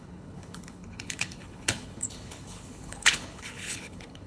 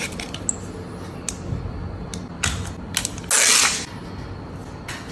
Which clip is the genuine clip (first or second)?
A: second